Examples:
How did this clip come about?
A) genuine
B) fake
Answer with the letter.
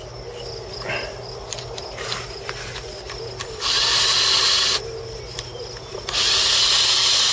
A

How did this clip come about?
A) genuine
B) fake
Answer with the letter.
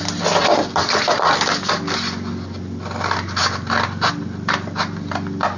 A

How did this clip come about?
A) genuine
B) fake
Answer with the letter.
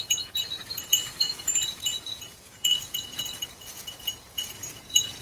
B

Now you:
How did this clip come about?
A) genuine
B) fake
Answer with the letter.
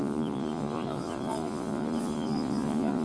B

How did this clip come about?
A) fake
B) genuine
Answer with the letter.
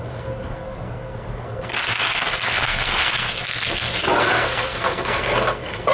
A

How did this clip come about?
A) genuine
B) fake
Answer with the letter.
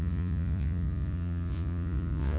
B